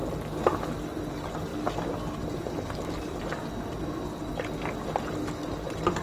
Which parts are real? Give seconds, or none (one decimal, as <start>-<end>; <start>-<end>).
0.0-6.0